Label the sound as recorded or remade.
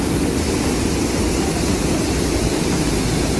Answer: recorded